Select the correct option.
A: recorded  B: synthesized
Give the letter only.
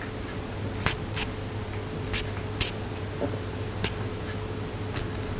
A